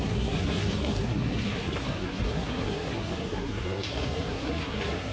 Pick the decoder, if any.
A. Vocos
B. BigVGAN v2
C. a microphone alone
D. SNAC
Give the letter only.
D